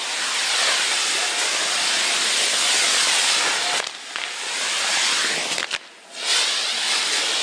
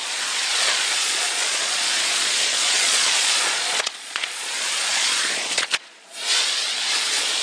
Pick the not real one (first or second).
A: second